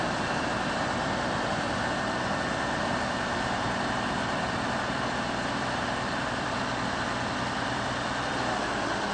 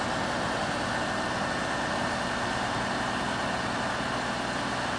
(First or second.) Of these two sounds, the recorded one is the second